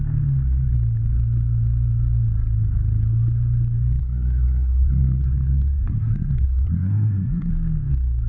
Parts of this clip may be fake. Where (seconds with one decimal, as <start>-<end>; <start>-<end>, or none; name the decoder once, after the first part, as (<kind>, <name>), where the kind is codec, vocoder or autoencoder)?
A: 4.0-7.5 (codec, SNAC)